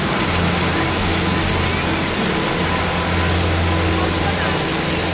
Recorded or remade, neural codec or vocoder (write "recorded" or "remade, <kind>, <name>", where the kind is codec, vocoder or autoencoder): recorded